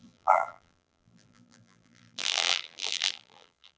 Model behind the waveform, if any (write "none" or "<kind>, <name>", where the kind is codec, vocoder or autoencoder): vocoder, BigVGAN v2